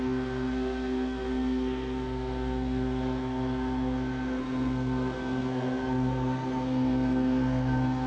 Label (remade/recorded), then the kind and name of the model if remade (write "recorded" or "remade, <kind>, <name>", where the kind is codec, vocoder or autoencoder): remade, codec, SNAC